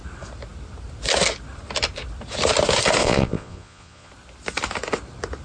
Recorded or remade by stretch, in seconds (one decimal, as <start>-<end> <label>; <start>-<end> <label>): 0.0-3.0 recorded; 3.0-4.1 remade; 4.1-5.4 recorded